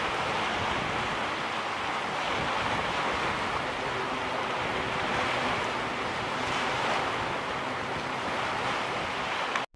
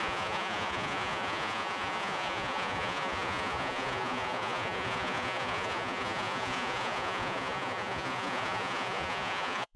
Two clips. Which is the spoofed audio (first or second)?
second